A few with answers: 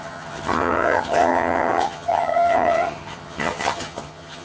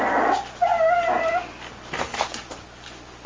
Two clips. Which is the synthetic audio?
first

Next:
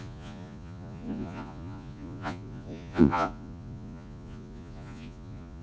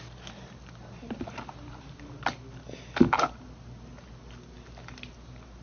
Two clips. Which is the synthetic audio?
first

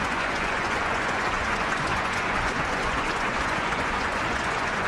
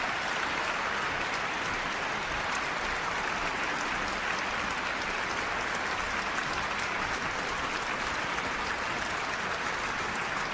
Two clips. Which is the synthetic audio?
first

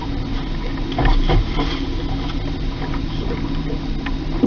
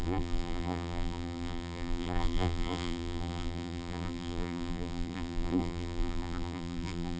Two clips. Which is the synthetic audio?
second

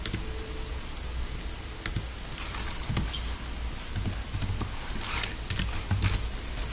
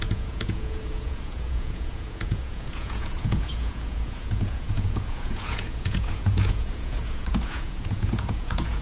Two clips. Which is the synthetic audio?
second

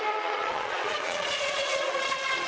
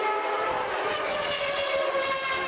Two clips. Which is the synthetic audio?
first